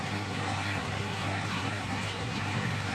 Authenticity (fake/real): fake